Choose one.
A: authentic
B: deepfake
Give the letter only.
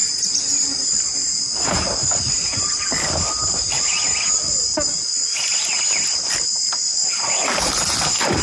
A